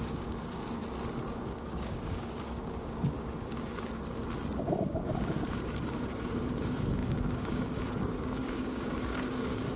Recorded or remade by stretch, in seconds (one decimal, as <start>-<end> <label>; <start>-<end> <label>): 0.0-0.8 remade; 0.8-1.3 recorded; 1.3-3.7 remade; 3.7-4.6 recorded; 4.6-9.8 remade